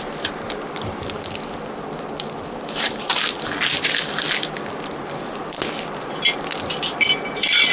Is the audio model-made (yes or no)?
no